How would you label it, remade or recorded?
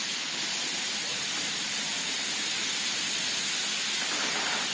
recorded